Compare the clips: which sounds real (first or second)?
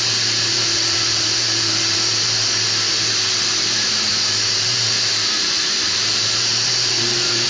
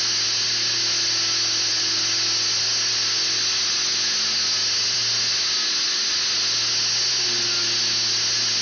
second